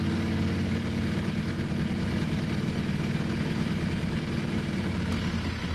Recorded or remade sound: recorded